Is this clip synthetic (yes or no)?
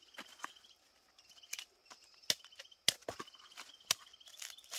no